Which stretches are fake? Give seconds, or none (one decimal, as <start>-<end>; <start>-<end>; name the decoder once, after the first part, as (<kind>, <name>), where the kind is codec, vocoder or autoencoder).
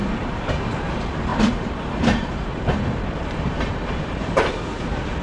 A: 0.0-0.6 (vocoder, BigVGAN v2); 1.3-4.4